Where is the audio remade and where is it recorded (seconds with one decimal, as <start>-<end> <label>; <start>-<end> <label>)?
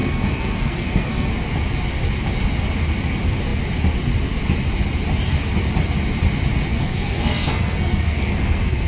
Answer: 0.0-1.3 remade; 1.3-6.7 recorded; 6.7-8.9 remade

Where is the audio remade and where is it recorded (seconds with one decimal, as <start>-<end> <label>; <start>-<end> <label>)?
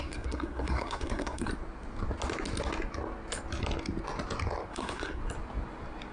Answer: 0.0-1.5 remade; 1.5-4.7 recorded; 4.7-5.2 remade; 5.2-6.1 recorded